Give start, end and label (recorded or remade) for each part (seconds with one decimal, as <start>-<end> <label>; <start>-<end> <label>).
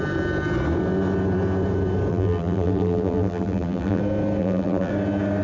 0.0-2.1 recorded; 2.1-4.0 remade; 4.0-4.4 recorded; 4.4-4.9 remade; 4.9-5.4 recorded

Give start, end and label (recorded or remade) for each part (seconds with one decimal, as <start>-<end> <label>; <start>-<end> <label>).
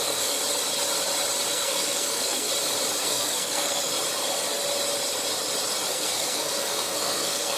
0.0-0.4 remade; 0.4-1.5 recorded; 1.5-2.5 remade; 2.5-3.0 recorded; 3.0-3.9 remade; 3.9-5.9 recorded; 5.9-7.6 remade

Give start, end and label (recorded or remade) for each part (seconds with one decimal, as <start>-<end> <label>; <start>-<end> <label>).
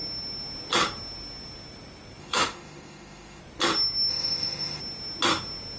0.0-2.2 recorded; 2.2-3.4 remade; 3.4-4.1 recorded; 4.1-4.8 remade; 4.8-5.8 recorded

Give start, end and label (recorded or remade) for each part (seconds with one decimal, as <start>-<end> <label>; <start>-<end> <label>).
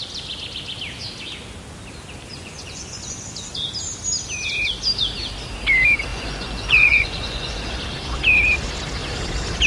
0.0-2.3 recorded; 2.3-3.5 remade; 3.5-6.1 recorded; 6.1-7.7 remade; 7.7-9.7 recorded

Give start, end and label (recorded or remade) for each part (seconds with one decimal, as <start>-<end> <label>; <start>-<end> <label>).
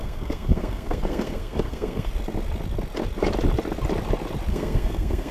0.0-2.1 remade; 2.1-4.5 recorded; 4.5-5.3 remade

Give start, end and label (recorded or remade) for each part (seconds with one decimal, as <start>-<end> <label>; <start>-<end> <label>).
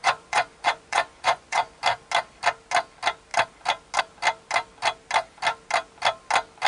0.0-1.8 remade; 1.8-6.7 recorded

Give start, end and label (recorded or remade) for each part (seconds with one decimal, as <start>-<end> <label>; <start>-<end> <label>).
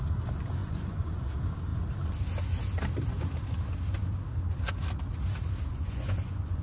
0.0-0.6 recorded; 0.6-1.2 remade; 1.2-5.7 recorded; 5.7-6.6 remade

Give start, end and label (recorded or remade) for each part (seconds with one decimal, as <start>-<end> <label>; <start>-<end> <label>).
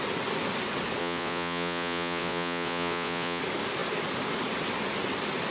0.0-1.0 recorded; 1.0-3.4 remade; 3.4-5.5 recorded